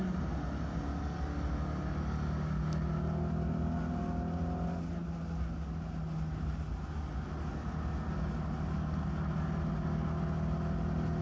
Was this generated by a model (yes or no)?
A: no